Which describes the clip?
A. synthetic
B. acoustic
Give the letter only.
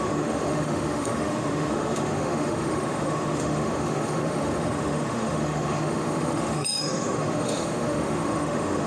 A